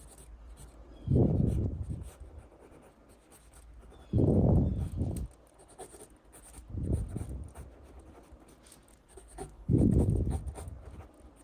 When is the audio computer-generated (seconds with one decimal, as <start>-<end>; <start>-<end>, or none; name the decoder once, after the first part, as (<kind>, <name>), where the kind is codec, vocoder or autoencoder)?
8.9-10.4 (codec, DAC)